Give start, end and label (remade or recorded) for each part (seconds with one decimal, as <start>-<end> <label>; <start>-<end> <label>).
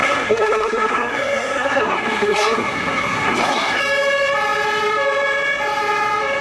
0.0-3.8 remade; 3.8-6.4 recorded